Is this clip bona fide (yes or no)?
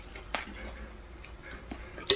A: yes